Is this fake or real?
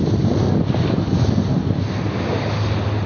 real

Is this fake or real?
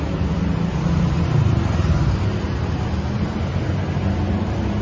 real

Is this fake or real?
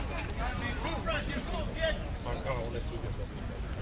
real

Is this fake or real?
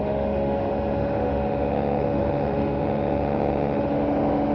fake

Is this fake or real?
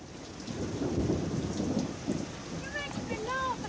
real